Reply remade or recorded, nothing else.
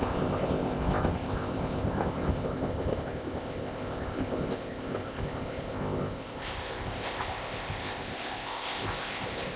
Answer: remade